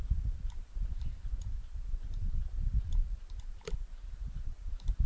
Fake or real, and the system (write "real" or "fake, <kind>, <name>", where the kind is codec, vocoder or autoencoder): fake, vocoder, BigVGAN v2